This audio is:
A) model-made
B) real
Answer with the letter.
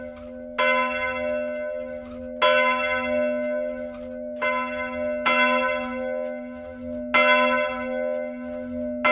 B